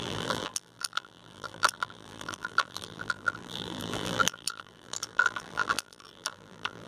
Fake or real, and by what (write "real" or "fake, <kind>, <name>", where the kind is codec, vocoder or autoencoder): fake, vocoder, BigVGAN v2